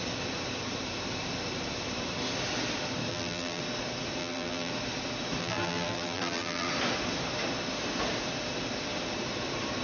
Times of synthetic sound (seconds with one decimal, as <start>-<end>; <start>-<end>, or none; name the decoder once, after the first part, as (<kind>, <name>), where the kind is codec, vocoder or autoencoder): 3.1-3.6 (vocoder, BigVGAN v2); 4.2-4.7; 5.4-6.7